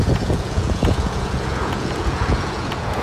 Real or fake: fake